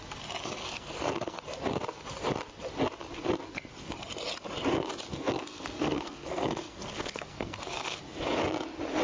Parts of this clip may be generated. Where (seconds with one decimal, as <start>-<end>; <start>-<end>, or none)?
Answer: 0.6-1.4; 5.1-8.0